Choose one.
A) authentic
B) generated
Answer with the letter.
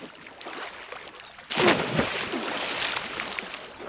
A